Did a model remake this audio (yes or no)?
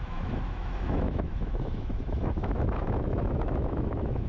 yes